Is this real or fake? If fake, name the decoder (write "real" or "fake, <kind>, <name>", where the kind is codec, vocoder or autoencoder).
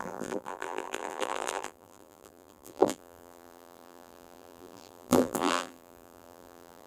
fake, vocoder, BigVGAN v2